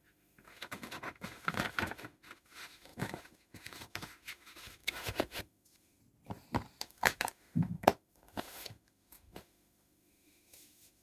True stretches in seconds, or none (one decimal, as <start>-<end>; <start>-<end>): 6.0-6.8